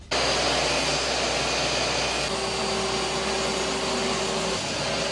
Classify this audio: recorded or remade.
recorded